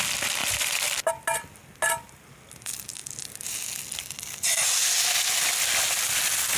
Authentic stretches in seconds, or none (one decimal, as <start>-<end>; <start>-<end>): 0.0-0.4; 1.1-6.6